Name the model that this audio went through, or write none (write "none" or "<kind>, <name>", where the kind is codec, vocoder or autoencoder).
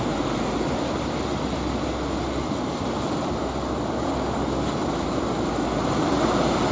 none